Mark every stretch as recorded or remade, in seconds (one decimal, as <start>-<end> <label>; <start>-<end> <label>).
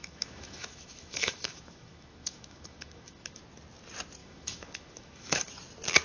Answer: 0.0-3.4 remade; 3.4-4.2 recorded; 4.2-5.5 remade; 5.5-6.0 recorded